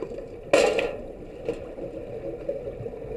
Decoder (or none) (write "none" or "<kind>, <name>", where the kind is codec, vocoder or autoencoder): none